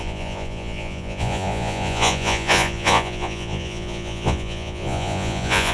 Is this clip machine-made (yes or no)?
yes